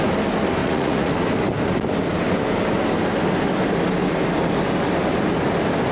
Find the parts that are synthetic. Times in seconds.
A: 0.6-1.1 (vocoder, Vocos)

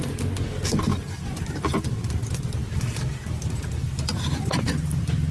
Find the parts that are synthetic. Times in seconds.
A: 0.9-1.8 (vocoder, BigVGAN v2); 2.6-5.3

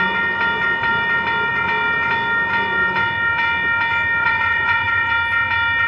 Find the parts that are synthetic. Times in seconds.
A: 4.2-5.1 (vocoder, Vocos)

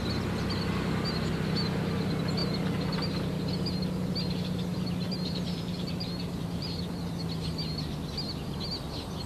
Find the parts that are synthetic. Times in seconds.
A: 4.7-7.0 (vocoder, BigVGAN v2)

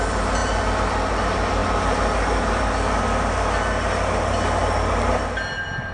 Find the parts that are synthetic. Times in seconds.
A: none